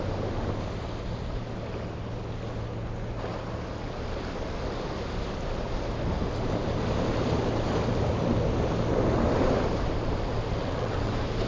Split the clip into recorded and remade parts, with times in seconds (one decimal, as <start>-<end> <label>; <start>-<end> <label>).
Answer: 0.0-10.6 recorded; 10.6-11.1 remade; 11.1-11.5 recorded